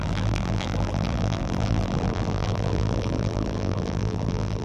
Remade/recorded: remade